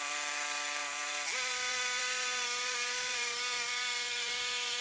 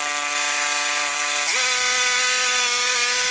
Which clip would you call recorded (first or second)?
second